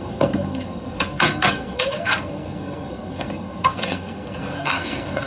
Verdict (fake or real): fake